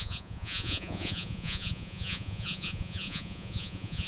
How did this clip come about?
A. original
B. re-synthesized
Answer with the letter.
B